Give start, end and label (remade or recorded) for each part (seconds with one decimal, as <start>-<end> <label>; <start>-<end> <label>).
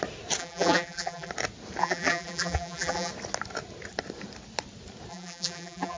0.0-0.4 recorded; 0.4-1.3 remade; 1.3-1.8 recorded; 1.8-3.1 remade; 3.1-5.1 recorded; 5.1-6.0 remade